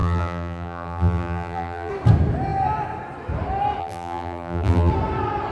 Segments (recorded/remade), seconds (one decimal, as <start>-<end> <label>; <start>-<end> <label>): 0.0-1.9 remade; 1.9-3.8 recorded; 3.8-4.9 remade; 4.9-5.5 recorded